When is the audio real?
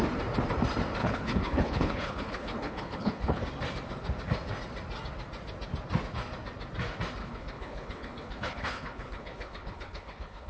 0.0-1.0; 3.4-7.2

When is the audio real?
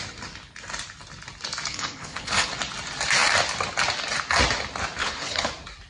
0.0-1.7; 2.5-5.0; 5.5-5.9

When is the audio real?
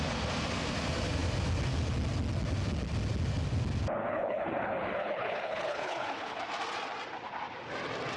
0.0-4.0; 6.4-8.2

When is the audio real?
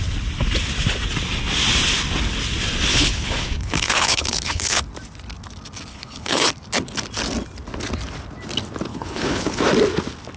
0.0-2.9; 4.8-5.9; 6.5-8.9; 9.6-10.4